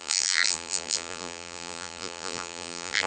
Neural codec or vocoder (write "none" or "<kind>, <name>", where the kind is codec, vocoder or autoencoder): vocoder, BigVGAN v2